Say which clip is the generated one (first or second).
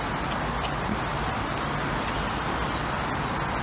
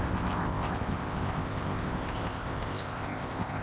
second